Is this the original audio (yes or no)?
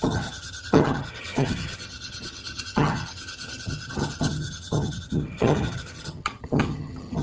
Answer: no